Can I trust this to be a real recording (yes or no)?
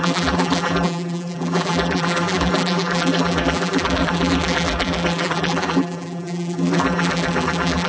no